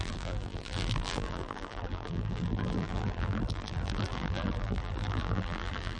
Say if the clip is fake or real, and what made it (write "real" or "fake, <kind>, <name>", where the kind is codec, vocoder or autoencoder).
fake, vocoder, BigVGAN v2